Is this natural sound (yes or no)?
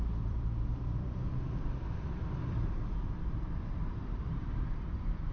no